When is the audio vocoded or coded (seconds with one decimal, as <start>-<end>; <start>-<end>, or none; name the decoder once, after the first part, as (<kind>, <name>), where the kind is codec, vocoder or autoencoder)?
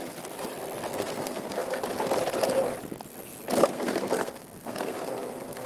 0.9-1.8 (codec, SNAC); 3.6-5.7